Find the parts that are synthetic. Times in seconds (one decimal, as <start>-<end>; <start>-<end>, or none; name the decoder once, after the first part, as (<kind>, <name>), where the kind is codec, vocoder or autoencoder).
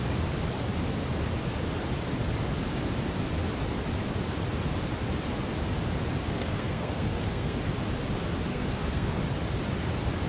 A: 6.2-7.6 (codec, SNAC); 8.5-9.2